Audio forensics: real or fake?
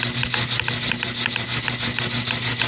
real